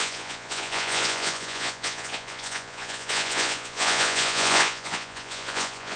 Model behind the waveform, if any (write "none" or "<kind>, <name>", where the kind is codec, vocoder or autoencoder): vocoder, Vocos